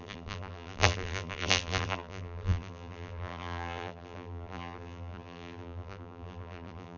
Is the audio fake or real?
fake